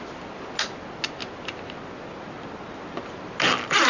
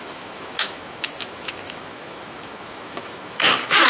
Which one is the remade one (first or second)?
second